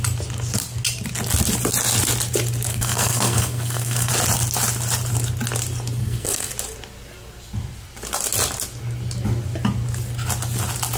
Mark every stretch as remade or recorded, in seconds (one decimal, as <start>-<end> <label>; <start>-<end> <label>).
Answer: 0.0-2.7 recorded; 2.7-4.1 remade; 4.1-6.0 recorded; 6.0-6.5 remade; 6.5-11.0 recorded